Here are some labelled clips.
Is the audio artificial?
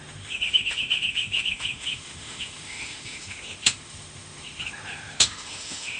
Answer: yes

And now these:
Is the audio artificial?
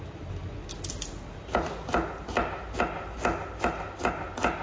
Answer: no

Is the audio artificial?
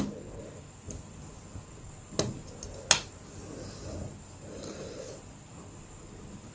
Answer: no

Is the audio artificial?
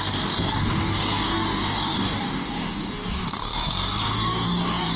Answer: yes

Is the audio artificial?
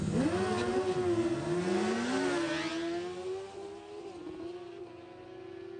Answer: no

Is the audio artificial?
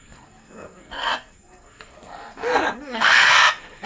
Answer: yes